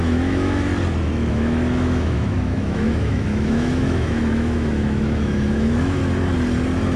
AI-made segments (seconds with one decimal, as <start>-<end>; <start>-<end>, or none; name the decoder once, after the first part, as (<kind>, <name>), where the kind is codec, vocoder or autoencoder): 0.0-0.7 (autoencoder, DAC-VAE); 1.3-6.0